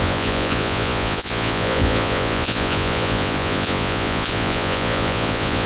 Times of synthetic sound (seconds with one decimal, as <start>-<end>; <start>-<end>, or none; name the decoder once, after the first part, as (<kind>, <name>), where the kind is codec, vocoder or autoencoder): 0.0-5.7 (vocoder, Vocos)